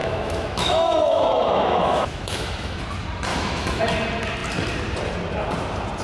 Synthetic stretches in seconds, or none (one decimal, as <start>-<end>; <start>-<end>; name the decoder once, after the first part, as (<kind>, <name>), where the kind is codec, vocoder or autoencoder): 0.0-2.8 (autoencoder, DAC-VAE); 3.3-3.8